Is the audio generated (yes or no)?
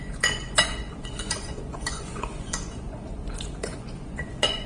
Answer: yes